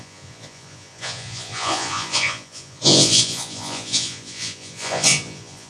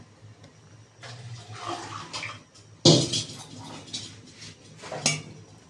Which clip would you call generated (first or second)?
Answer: first